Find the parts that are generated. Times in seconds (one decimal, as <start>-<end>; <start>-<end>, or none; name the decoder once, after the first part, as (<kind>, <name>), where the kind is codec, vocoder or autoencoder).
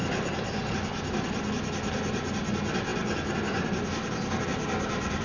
none